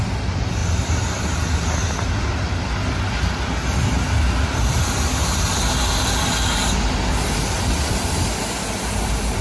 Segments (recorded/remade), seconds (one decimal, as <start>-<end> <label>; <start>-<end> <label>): 0.0-9.4 recorded